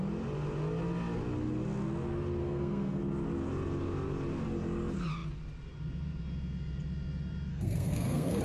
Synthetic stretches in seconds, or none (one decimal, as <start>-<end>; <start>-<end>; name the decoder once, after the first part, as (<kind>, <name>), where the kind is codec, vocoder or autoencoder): 2.4-3.0 (codec, SNAC); 7.5-8.4